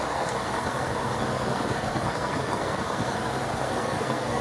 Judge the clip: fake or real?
fake